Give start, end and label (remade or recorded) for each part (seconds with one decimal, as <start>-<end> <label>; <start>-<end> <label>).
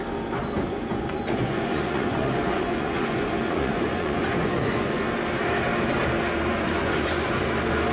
0.0-0.4 recorded; 0.4-5.0 remade; 5.0-6.5 recorded; 6.5-7.4 remade; 7.4-7.9 recorded